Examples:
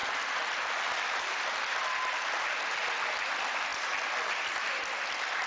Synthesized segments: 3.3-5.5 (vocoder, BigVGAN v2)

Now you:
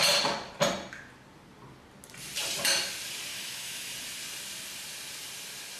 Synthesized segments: 3.3-3.9 (autoencoder, DAC-VAE)

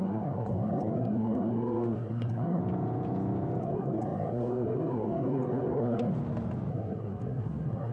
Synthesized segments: 0.0-2.6 (codec, SNAC); 3.6-6.1; 6.7-7.9

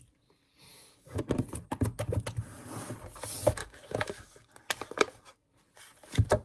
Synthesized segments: 0.7-1.2 (autoencoder, DAC-VAE); 3.6-4.5

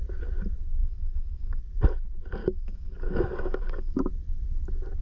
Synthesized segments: 0.8-1.6 (codec, DAC); 2.4-4.0

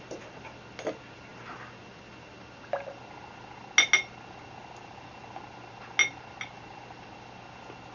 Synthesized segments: none

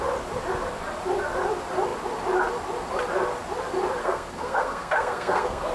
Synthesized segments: 4.0-5.7 (codec, SNAC)

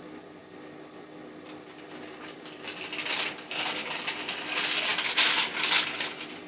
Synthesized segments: none